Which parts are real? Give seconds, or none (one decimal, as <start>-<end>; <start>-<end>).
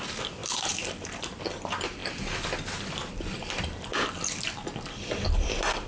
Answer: 2.0-2.7; 3.9-4.5